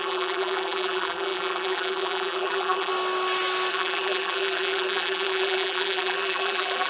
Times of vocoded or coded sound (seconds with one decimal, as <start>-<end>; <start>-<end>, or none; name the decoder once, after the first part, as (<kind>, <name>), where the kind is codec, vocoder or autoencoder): 0.0-2.9 (vocoder, BigVGAN v2); 3.7-6.9